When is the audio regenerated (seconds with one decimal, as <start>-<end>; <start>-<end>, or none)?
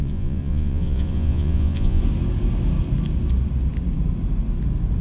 0.0-2.0